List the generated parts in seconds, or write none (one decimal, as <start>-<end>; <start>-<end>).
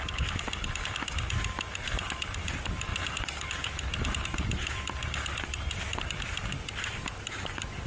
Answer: none